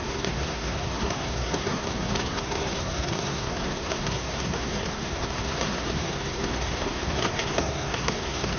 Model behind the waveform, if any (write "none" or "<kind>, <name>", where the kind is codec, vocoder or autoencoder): codec, SNAC